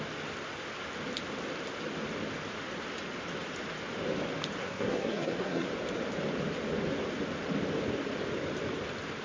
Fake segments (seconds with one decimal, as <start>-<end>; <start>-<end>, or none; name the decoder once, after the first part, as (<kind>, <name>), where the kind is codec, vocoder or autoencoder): 4.6-5.7 (codec, SNAC)